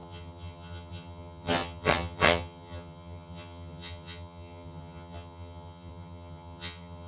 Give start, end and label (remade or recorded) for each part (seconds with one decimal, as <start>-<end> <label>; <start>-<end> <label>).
0.0-7.1 remade